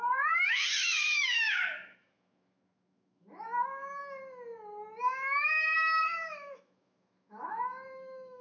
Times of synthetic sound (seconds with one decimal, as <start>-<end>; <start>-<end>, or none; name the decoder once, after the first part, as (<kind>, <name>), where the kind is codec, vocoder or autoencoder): 0.0-4.0 (autoencoder, DAC-VAE); 5.0-8.4